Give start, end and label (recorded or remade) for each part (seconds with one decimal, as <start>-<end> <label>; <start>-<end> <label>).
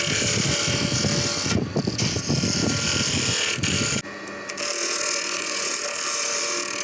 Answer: 0.0-4.8 recorded; 4.8-5.7 remade; 5.7-6.8 recorded